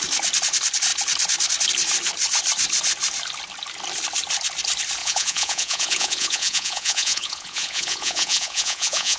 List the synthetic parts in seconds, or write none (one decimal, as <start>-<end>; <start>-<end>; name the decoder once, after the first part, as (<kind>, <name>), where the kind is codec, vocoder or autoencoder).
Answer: 5.0-9.2 (vocoder, Vocos)